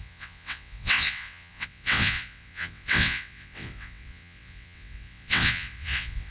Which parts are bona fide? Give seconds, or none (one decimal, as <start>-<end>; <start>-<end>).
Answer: none